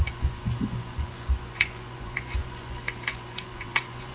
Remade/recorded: remade